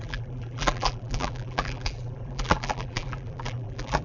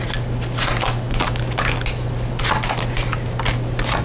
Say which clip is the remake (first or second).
first